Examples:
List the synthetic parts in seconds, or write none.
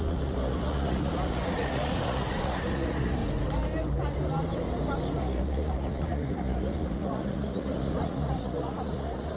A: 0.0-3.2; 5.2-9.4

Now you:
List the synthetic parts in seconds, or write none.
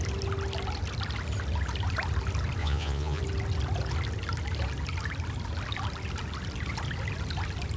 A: 2.6-3.2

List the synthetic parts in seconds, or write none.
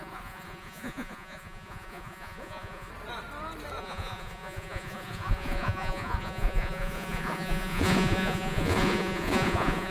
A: 0.0-2.9; 3.8-9.9